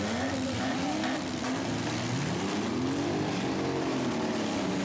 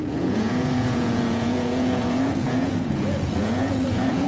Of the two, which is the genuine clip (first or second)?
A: first